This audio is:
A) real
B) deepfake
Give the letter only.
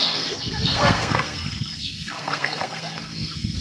B